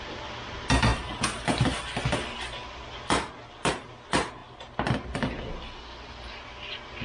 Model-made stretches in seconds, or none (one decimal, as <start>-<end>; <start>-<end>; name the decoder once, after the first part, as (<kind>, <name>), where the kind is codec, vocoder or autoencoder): none